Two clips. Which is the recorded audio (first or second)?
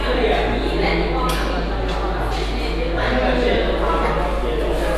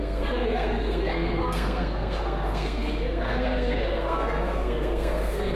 first